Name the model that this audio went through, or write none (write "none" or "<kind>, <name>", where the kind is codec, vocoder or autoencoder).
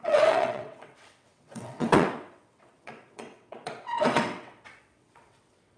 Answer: vocoder, WaveNeXt